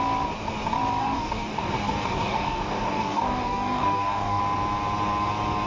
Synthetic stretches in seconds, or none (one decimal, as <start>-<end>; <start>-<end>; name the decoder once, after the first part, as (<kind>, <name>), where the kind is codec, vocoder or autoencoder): 1.0-4.4 (codec, DAC)

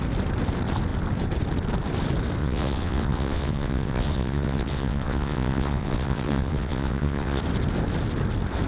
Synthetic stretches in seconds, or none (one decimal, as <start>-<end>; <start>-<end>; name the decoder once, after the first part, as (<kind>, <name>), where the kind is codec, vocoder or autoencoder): 2.4-7.4 (vocoder, WaveNeXt)

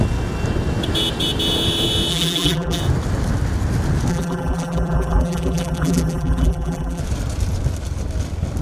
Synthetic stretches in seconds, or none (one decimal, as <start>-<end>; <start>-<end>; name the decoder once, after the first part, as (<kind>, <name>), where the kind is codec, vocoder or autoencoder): 2.1-2.8 (vocoder, BigVGAN v2); 4.1-7.0

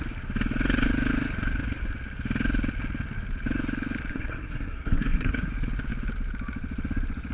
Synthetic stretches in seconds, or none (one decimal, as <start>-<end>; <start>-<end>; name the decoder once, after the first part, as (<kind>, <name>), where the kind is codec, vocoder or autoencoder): 4.1-5.5 (codec, SNAC)